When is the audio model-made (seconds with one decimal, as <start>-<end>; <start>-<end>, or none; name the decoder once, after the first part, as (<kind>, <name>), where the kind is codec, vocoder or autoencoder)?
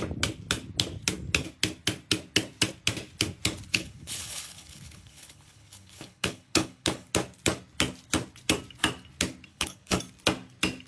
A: 3.7-7.1 (codec, HILCodec); 9.5-10.0